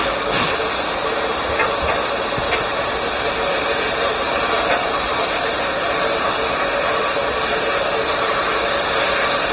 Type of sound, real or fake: real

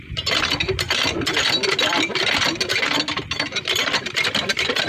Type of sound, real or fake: real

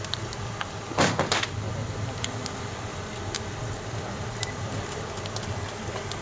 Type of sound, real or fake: real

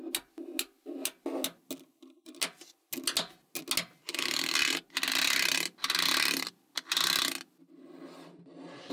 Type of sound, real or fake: real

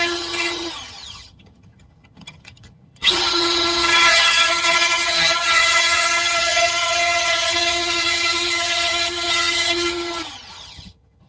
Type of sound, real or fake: fake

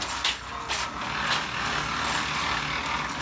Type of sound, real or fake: real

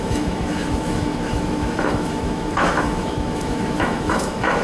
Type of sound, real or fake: fake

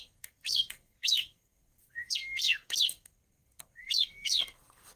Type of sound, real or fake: fake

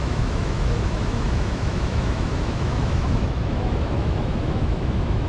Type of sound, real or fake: fake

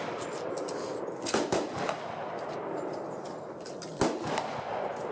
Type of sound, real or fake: real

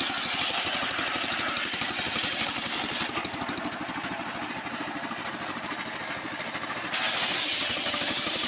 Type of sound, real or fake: real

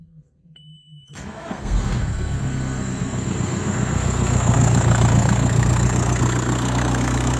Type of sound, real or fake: fake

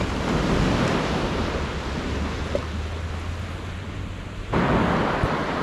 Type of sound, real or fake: real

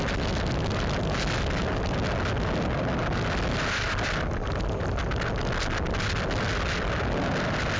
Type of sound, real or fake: real